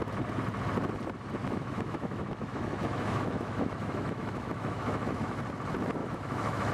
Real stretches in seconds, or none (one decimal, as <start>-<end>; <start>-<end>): 0.0-1.4; 5.4-6.0